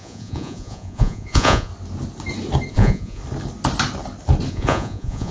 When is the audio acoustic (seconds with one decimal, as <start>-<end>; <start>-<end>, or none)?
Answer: 1.7-2.7; 3.2-4.5